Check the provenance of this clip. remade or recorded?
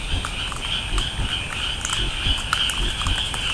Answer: recorded